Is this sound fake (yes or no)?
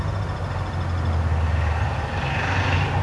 no